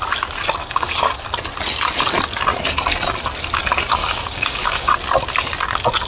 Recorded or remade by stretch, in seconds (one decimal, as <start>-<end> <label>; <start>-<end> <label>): 0.0-0.6 recorded; 0.6-1.2 remade; 1.2-4.0 recorded; 4.0-4.9 remade; 4.9-6.1 recorded